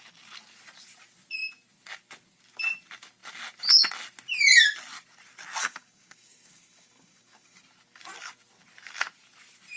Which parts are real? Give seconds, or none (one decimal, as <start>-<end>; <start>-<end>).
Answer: 0.0-5.6; 7.6-9.8